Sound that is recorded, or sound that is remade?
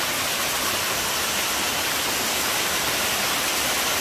recorded